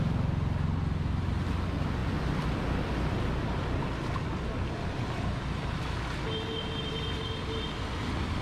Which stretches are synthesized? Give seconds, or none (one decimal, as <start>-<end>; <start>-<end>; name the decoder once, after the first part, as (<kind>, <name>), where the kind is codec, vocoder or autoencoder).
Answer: none